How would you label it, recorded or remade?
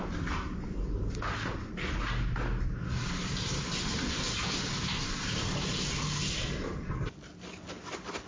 recorded